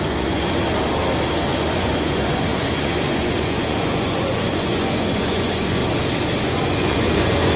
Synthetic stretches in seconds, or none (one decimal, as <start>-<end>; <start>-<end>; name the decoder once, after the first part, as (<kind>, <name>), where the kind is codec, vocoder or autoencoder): 0.0-0.6 (vocoder, Vocos); 1.5-5.8; 6.4-7.6